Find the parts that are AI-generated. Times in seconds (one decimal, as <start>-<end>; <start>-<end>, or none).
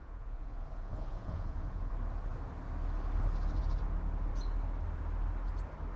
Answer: 0.0-1.9